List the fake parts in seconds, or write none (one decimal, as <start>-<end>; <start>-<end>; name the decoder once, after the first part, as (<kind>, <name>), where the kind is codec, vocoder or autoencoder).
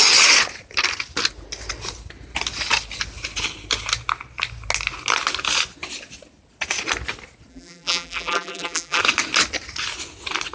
7.5-9.0 (vocoder, BigVGAN v2)